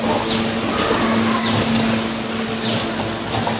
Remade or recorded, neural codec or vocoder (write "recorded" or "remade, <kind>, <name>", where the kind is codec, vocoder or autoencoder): recorded